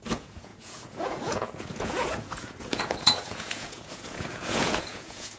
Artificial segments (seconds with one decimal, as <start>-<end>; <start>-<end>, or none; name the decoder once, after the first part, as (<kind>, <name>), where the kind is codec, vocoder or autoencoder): 0.0-5.4 (vocoder, Vocos)